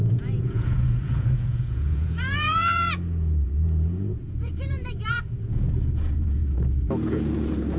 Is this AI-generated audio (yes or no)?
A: yes